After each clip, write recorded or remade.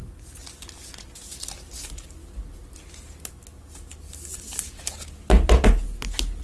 recorded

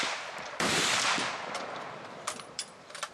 remade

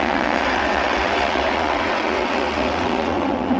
remade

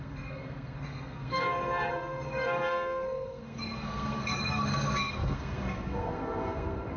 remade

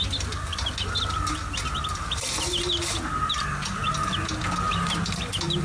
recorded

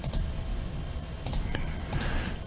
recorded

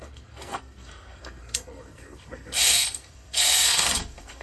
remade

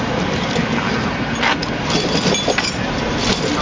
recorded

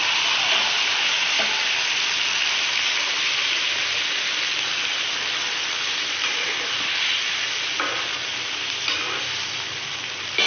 recorded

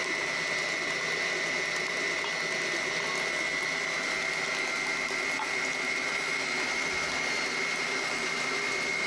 recorded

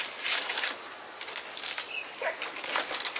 recorded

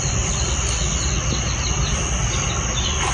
recorded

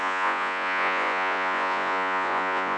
remade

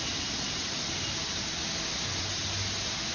recorded